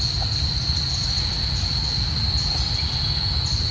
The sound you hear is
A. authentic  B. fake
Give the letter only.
A